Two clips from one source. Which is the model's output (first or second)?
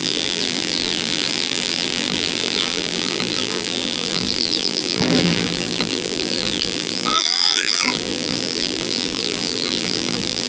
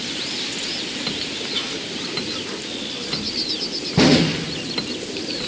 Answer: first